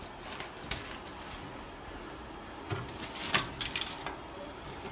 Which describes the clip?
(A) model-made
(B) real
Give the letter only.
B